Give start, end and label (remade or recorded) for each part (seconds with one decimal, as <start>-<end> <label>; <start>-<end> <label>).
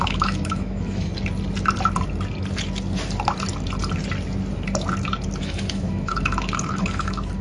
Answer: 0.0-1.1 remade; 1.1-5.4 recorded; 5.4-7.4 remade